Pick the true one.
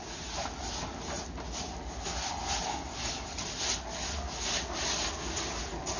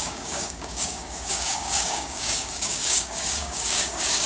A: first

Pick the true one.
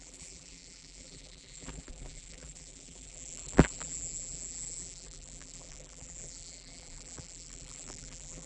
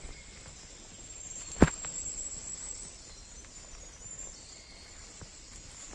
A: second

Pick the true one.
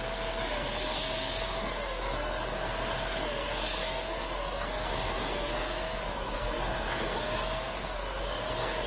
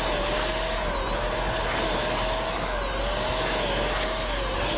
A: second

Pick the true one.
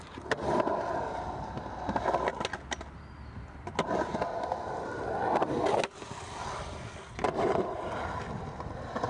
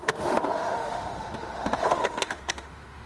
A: first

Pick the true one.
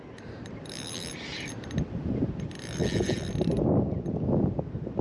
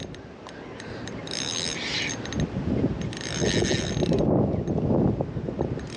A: second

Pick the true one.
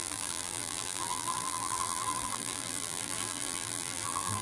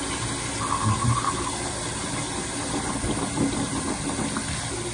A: second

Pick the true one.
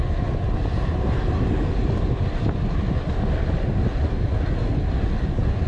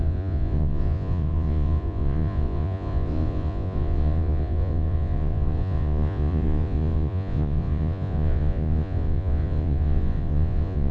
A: first